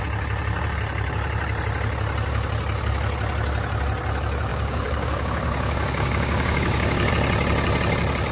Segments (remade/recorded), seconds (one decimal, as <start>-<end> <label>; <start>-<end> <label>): 0.0-4.5 recorded; 4.5-7.1 remade; 7.1-8.3 recorded